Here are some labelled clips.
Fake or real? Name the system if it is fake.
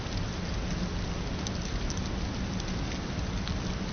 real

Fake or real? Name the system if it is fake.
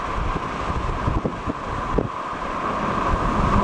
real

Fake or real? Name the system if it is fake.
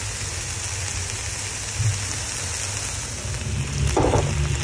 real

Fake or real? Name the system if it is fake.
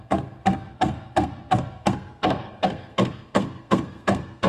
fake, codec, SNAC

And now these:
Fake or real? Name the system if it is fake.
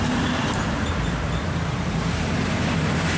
fake, vocoder, BigVGAN v2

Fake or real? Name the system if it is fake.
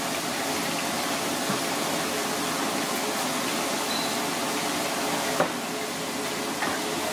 real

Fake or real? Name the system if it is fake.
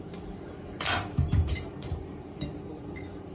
fake, vocoder, BigVGAN v2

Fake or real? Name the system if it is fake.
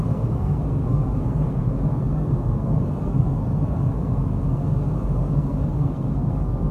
fake, codec, SNAC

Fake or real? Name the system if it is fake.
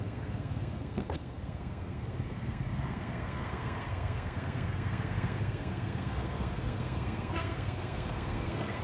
fake, codec, SNAC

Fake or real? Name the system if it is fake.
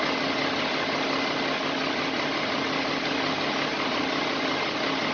real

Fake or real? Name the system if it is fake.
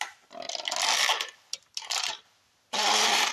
real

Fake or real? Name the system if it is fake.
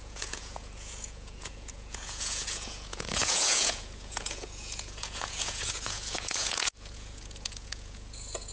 fake, vocoder, Vocos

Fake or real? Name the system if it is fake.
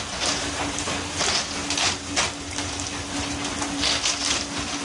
real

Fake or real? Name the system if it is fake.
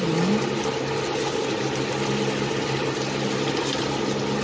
real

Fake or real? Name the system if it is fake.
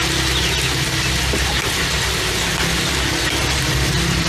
real